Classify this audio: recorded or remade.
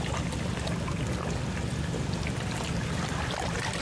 recorded